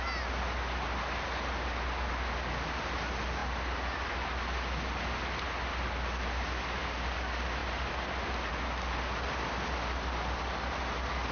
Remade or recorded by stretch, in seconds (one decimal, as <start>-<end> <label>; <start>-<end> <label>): 0.0-11.3 recorded